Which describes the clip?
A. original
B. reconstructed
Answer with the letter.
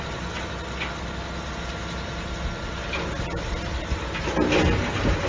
A